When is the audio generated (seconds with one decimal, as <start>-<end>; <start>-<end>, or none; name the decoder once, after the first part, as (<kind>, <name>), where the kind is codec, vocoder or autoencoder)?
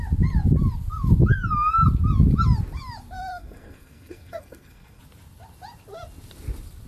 3.3-5.0 (codec, SNAC)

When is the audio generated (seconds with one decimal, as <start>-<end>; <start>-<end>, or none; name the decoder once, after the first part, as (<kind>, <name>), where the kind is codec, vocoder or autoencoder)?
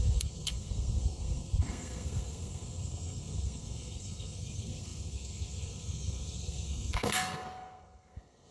0.0-8.5 (codec, SNAC)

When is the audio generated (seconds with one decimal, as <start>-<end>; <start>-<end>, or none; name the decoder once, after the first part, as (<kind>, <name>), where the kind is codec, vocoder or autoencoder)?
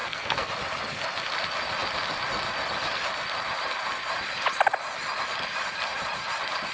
0.0-0.5 (codec, SNAC)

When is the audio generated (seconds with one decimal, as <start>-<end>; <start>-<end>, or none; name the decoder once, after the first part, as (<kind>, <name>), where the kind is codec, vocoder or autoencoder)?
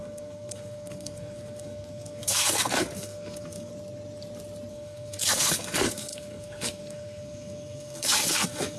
0.0-3.7 (codec, SNAC); 4.7-8.8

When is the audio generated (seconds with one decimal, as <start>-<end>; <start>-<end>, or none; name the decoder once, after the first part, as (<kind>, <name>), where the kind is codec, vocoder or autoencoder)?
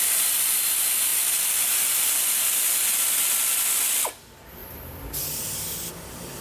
none